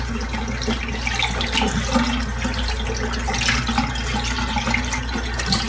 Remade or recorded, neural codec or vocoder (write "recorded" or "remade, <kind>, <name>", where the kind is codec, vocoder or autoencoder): recorded